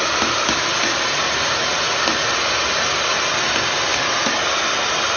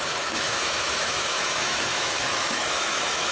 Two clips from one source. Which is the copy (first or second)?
second